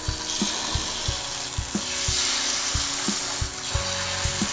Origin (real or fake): real